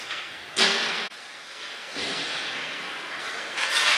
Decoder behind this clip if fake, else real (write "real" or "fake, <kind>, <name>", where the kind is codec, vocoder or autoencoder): fake, codec, SNAC